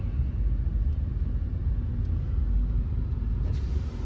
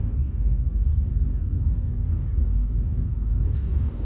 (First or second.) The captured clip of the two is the first